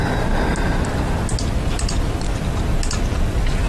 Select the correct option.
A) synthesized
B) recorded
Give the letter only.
B